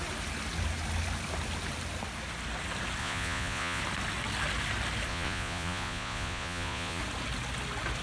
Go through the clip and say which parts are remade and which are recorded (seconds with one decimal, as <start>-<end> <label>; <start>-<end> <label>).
0.0-3.0 recorded; 3.0-3.8 remade; 3.8-5.1 recorded; 5.1-7.0 remade; 7.0-8.0 recorded

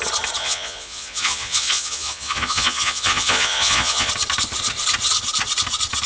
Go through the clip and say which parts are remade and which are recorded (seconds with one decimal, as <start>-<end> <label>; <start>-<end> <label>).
0.0-0.4 recorded; 0.4-4.1 remade; 4.1-6.1 recorded

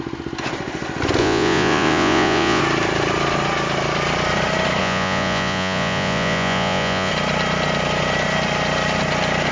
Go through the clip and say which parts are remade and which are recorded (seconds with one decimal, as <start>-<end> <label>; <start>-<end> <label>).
0.0-1.2 recorded; 1.2-2.6 remade; 2.6-4.8 recorded; 4.8-7.1 remade; 7.1-9.5 recorded

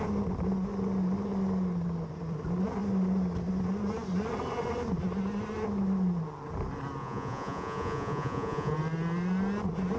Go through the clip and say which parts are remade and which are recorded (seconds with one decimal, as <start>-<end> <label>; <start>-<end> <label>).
0.0-7.0 recorded; 7.0-8.7 remade; 8.7-10.0 recorded

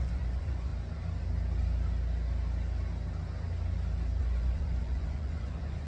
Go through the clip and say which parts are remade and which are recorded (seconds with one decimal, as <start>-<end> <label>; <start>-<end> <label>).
0.0-0.7 remade; 0.7-4.2 recorded; 4.2-5.9 remade

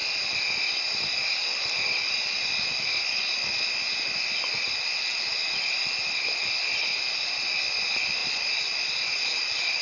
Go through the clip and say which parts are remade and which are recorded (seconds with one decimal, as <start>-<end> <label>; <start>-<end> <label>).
0.0-8.2 recorded; 8.2-9.8 remade